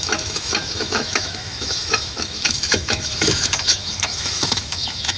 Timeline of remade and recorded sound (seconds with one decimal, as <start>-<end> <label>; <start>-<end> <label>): 0.0-5.2 remade

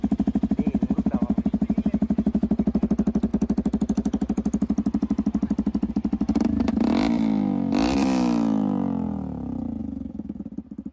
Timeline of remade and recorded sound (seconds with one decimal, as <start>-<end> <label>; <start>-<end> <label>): 0.0-9.8 recorded; 9.8-10.4 remade; 10.4-10.9 recorded

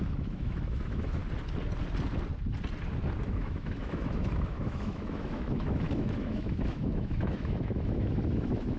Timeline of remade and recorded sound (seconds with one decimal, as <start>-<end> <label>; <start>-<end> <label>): 0.0-1.2 remade; 1.2-3.2 recorded; 3.2-8.8 remade

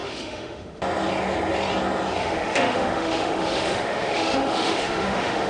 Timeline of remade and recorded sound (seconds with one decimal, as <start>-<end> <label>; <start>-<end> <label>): 0.0-0.8 remade; 0.8-2.2 recorded; 2.2-5.5 remade